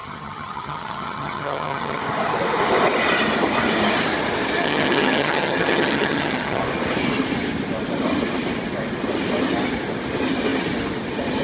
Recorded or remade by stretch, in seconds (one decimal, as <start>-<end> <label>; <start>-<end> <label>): 0.0-2.0 remade; 2.0-4.6 recorded; 4.6-6.6 remade; 6.6-11.4 recorded